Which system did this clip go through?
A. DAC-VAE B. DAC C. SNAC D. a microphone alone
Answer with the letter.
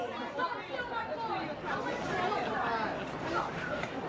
D